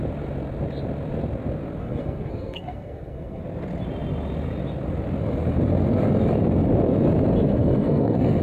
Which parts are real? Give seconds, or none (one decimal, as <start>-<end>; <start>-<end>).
0.0-1.8; 3.4-7.5